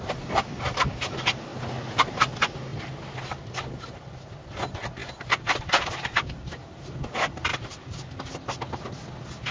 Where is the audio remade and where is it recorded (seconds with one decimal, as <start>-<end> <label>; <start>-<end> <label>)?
0.0-9.5 recorded